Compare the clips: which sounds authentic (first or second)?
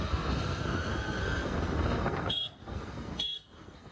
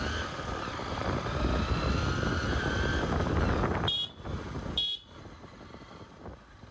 second